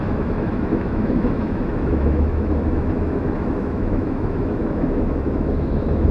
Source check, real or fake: fake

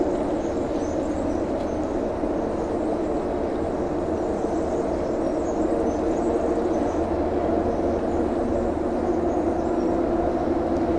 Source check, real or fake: real